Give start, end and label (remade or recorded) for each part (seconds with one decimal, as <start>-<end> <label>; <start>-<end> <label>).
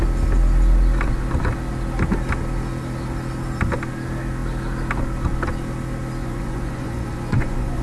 0.0-6.2 recorded; 6.2-7.8 remade